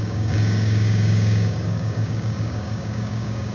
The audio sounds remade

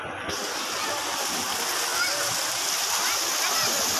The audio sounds recorded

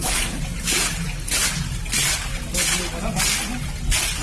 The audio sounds recorded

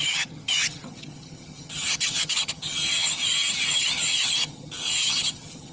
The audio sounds remade